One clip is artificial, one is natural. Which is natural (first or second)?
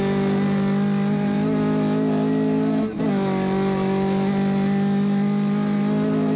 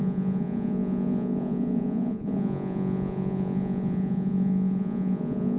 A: first